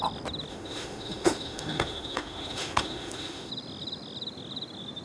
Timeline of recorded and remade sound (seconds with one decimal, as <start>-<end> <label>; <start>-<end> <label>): 0.0-0.5 recorded; 0.5-3.5 remade; 3.5-5.0 recorded

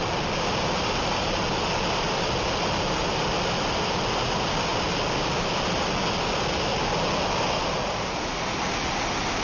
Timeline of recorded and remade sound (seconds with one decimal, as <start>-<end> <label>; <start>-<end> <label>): 0.0-9.4 recorded

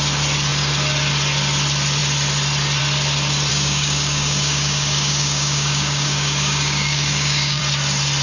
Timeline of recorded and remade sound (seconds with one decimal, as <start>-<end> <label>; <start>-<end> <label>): 0.0-3.5 recorded; 3.5-7.6 remade; 7.6-8.2 recorded

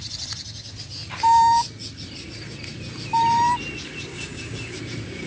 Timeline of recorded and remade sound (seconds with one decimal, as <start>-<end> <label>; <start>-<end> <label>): 0.0-4.1 recorded; 4.1-4.8 remade; 4.8-5.3 recorded